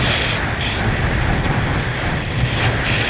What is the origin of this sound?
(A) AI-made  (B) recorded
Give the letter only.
B